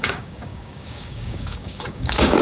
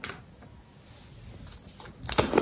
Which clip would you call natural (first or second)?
second